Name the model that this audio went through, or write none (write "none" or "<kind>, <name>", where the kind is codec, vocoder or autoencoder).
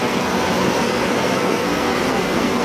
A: codec, SNAC